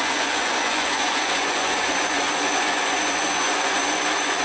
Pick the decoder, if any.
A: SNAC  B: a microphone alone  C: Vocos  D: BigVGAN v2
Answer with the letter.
C